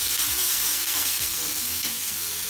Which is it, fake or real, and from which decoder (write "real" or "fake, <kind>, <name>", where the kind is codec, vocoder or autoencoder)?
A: fake, codec, SNAC